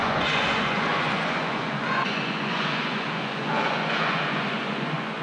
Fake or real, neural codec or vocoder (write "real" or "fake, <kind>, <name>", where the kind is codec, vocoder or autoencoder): fake, vocoder, Vocos